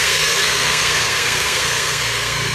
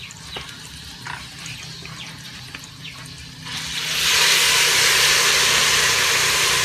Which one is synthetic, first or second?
first